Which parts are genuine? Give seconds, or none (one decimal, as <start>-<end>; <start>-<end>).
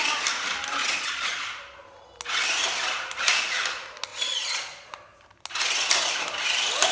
0.0-0.8; 1.5-4.1; 4.9-6.9